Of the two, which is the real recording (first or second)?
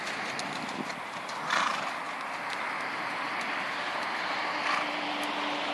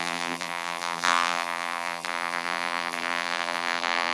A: first